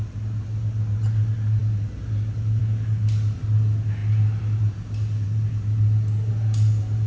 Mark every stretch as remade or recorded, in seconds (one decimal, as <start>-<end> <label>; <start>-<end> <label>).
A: 0.0-7.1 recorded